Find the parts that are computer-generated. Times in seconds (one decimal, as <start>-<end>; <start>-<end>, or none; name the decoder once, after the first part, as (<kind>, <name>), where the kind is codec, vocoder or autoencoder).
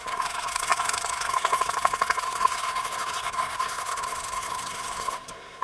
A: 0.0-5.6 (codec, SNAC)